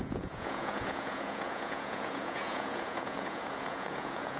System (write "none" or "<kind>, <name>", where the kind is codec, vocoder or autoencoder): vocoder, Vocos